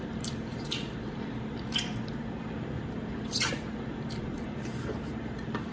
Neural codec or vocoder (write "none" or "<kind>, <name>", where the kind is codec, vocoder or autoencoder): vocoder, BigVGAN v2